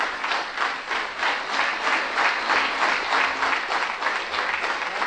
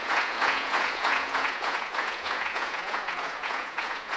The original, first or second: first